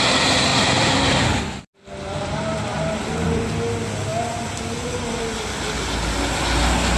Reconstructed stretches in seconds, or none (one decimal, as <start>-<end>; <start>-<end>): 0.5-3.6